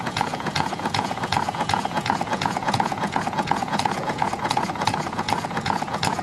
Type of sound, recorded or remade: remade